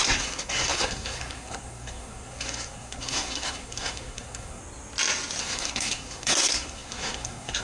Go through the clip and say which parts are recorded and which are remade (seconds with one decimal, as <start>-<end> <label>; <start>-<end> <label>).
0.0-4.6 remade; 4.6-5.4 recorded; 5.4-7.6 remade